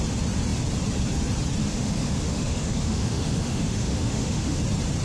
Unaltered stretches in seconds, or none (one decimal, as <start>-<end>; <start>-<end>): 0.0-1.6; 4.6-5.0

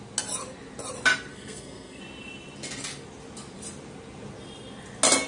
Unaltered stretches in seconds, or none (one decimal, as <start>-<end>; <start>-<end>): 0.0-1.3; 2.0-5.3

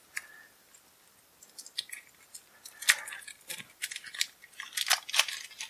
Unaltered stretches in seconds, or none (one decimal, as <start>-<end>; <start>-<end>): 0.0-5.7

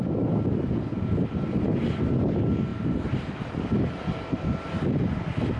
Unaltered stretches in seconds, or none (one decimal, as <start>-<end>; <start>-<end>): 0.0-2.7; 3.7-5.6

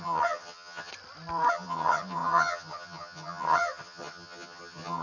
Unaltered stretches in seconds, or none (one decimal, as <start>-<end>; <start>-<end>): 0.9-1.5

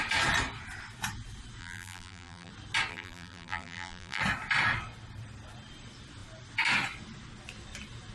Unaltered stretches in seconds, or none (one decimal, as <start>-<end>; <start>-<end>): 0.0-1.6; 2.5-2.9; 4.2-8.1

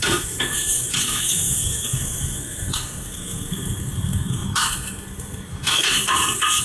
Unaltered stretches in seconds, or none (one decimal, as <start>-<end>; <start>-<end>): none

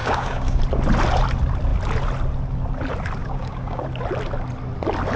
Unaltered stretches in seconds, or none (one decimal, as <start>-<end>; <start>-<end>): 0.6-3.2; 3.8-5.2